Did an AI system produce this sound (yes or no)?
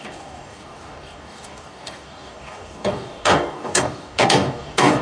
yes